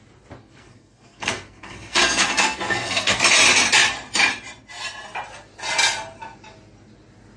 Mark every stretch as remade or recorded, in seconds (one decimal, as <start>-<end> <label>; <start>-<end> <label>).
0.0-0.4 recorded; 0.4-3.2 remade; 3.2-7.4 recorded